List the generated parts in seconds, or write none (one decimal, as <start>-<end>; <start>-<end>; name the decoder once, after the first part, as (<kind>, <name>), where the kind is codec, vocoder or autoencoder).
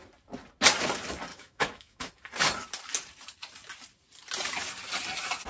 1.3-2.1 (autoencoder, DAC-VAE)